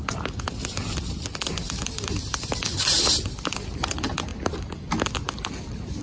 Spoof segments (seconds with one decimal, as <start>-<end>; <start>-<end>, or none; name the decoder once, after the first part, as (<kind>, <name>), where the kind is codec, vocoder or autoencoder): none